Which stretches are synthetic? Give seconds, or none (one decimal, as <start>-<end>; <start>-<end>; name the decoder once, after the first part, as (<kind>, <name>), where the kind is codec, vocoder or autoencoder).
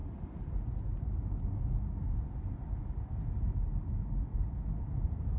none